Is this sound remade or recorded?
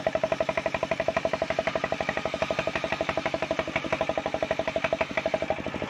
recorded